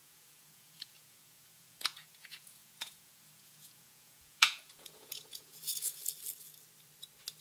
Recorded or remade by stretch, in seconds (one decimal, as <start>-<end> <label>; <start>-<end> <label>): 0.0-6.0 remade; 6.0-7.4 recorded